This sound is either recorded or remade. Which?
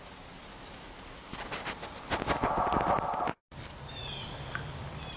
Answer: recorded